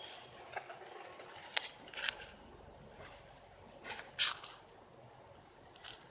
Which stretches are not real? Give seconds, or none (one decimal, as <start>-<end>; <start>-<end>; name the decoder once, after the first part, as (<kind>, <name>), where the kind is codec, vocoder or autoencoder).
none